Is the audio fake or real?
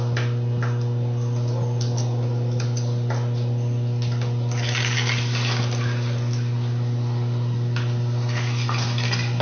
real